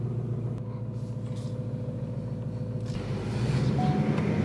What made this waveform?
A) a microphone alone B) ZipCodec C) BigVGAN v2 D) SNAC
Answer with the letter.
A